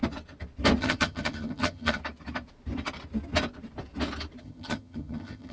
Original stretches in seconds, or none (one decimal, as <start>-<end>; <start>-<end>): 0.0-0.8; 2.0-4.4